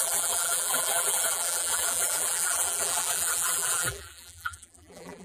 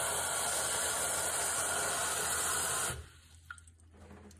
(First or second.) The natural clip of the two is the second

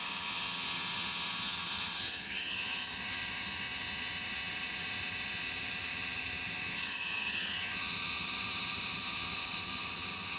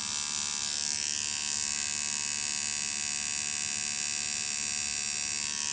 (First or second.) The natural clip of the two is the second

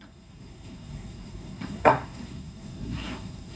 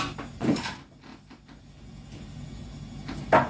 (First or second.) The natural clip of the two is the second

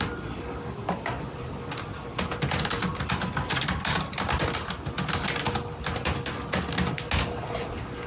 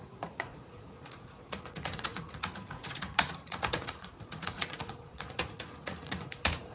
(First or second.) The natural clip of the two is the first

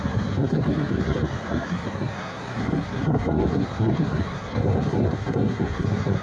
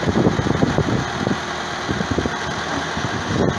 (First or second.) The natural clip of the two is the second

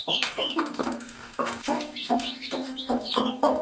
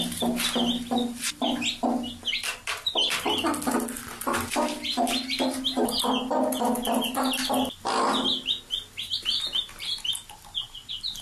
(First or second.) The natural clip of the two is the second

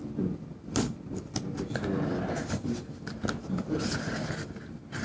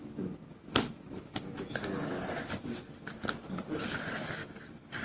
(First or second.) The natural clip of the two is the first